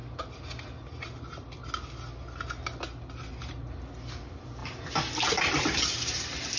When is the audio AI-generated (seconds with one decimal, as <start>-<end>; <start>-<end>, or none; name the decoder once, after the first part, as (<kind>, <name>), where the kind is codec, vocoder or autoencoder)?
none